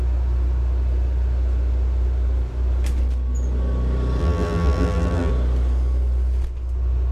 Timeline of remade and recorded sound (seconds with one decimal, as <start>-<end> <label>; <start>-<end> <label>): 0.0-4.2 recorded; 4.2-5.3 remade; 5.3-7.1 recorded